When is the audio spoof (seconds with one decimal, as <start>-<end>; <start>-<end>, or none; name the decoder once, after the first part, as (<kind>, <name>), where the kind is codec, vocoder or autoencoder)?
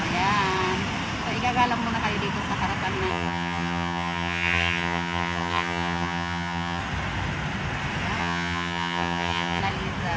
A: 3.1-6.8 (vocoder, HiFi-GAN); 8.2-9.6